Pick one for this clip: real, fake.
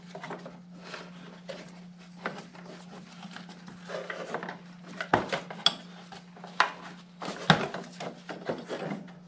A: real